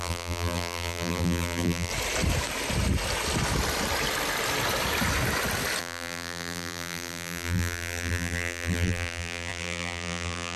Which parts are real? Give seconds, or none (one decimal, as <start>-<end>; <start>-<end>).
1.9-5.8